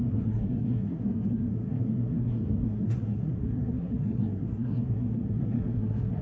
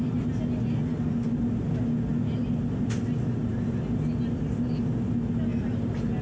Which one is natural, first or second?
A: second